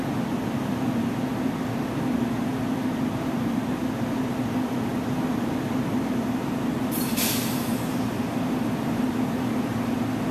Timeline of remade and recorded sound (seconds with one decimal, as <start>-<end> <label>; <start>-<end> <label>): 0.0-10.3 recorded